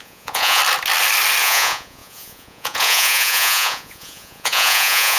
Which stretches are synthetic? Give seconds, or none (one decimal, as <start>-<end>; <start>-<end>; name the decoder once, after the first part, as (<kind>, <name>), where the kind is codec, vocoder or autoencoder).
0.0-0.6 (vocoder, Vocos); 1.4-5.2